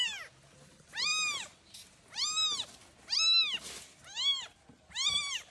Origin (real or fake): real